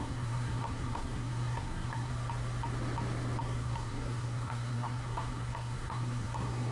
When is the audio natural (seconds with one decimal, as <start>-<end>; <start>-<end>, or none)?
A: 2.1-3.4